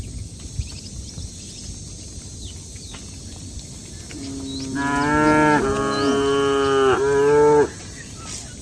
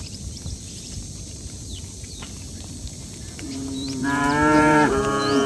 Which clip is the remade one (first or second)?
second